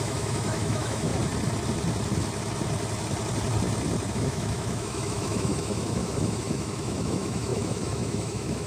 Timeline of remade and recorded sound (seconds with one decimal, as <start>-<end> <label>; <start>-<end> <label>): 0.0-1.1 remade; 1.1-4.1 recorded; 4.1-8.7 remade